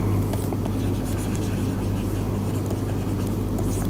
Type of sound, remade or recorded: recorded